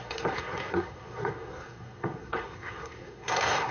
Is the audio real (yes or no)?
no